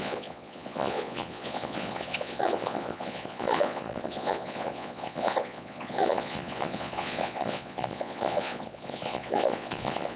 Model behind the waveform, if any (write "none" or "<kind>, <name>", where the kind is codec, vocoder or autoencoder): vocoder, Vocos